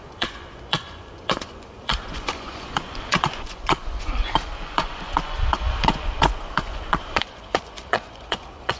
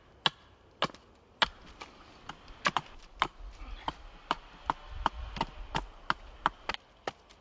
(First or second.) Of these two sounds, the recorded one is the second